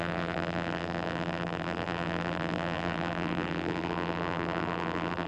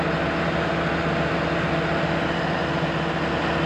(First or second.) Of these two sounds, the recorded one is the second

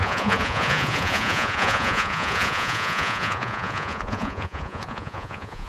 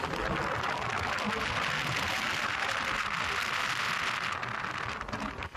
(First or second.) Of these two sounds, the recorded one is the second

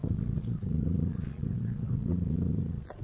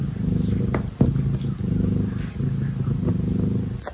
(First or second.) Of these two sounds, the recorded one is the second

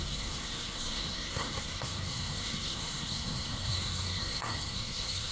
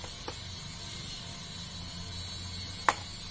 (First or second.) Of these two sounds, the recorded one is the second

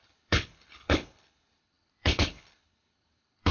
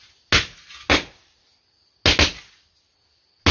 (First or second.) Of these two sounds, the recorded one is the second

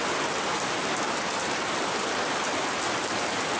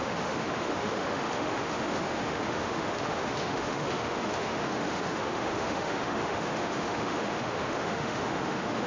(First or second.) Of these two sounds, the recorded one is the first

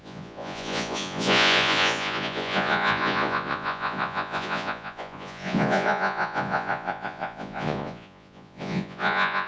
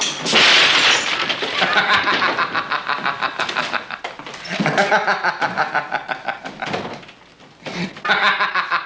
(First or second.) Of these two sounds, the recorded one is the second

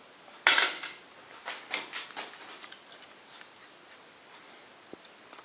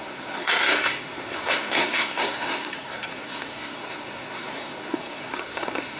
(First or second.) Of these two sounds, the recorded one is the first